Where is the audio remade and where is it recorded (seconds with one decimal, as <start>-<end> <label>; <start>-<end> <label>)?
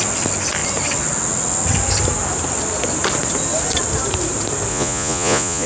0.0-4.7 recorded; 4.7-5.7 remade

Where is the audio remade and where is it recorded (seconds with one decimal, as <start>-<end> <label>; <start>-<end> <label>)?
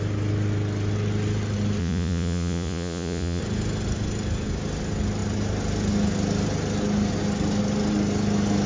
0.0-1.8 recorded; 1.8-3.4 remade; 3.4-8.7 recorded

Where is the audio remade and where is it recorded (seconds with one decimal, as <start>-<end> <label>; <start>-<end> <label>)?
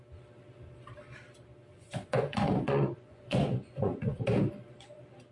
0.0-1.7 recorded; 1.7-4.2 remade; 4.2-5.3 recorded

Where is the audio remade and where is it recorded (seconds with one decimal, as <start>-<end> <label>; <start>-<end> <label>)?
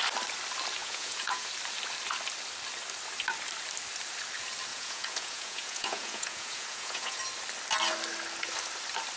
0.0-0.8 recorded; 0.8-1.5 remade; 1.5-4.7 recorded; 4.7-7.2 remade; 7.2-9.2 recorded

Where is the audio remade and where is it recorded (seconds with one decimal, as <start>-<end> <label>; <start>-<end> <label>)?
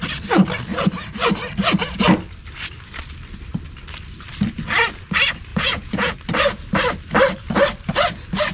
0.0-5.5 recorded; 5.5-6.1 remade; 6.1-8.5 recorded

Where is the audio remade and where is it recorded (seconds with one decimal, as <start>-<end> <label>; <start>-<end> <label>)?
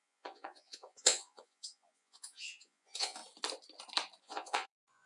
0.0-3.2 remade; 3.2-4.2 recorded; 4.2-5.1 remade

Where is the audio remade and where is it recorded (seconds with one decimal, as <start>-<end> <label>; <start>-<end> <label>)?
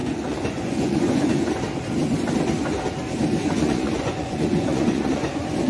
0.0-1.5 remade; 1.5-3.4 recorded; 3.4-5.7 remade